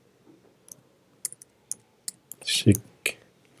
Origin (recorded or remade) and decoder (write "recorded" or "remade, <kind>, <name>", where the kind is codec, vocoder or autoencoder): recorded